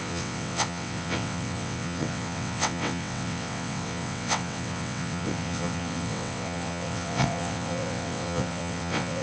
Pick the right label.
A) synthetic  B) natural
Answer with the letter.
A